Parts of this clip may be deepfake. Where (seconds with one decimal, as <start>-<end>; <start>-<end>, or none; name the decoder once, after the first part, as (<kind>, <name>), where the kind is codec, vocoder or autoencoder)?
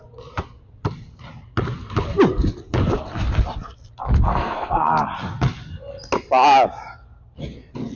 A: 4.3-4.9 (codec, SNAC)